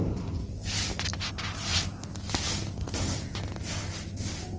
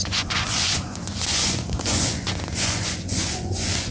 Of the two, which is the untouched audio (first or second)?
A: first